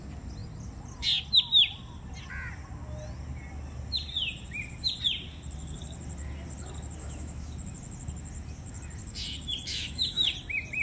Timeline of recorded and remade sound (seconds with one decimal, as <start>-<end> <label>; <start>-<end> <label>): 0.0-7.0 recorded; 7.0-7.5 remade; 7.5-9.7 recorded; 9.7-10.3 remade; 10.3-10.8 recorded